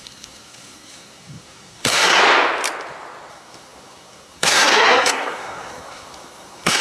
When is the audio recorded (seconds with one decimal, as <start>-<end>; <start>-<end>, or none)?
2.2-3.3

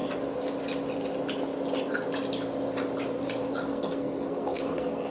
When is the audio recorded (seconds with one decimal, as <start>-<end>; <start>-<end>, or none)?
0.0-3.7

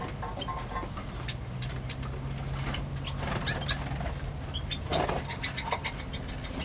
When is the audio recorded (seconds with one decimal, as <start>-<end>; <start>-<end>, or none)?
0.0-6.6